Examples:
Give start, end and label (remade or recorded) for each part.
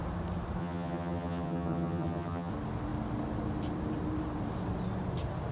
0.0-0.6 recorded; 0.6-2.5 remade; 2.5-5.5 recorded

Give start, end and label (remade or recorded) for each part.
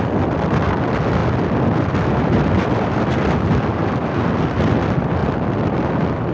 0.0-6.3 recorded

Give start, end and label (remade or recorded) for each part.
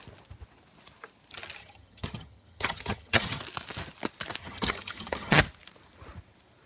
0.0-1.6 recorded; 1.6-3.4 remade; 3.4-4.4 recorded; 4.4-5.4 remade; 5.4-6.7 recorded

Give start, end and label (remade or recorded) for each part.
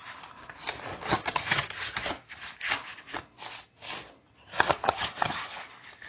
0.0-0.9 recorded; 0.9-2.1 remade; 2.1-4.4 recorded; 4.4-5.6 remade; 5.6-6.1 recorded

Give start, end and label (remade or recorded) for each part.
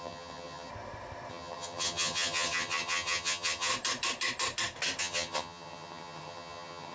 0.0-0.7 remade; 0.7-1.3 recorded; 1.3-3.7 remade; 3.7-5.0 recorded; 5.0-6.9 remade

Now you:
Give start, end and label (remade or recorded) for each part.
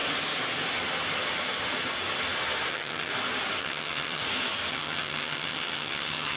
0.0-2.7 recorded; 2.7-3.1 remade; 3.1-3.6 recorded; 3.6-4.2 remade; 4.2-4.7 recorded; 4.7-6.4 remade